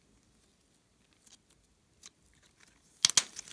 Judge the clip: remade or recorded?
recorded